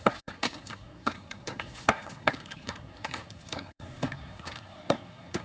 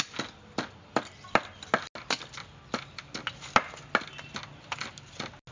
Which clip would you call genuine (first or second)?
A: second